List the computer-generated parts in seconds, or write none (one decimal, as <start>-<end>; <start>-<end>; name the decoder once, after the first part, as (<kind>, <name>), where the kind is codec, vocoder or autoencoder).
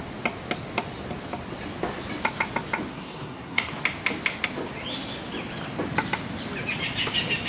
2.9-3.7 (codec, SNAC)